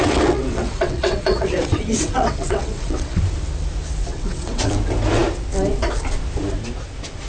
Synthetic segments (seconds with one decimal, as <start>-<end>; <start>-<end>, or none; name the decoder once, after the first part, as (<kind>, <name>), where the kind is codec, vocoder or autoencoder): 0.0-3.2 (vocoder, WaveNeXt); 4.1-4.7